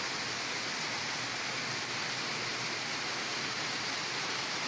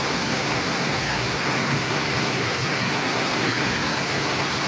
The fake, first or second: second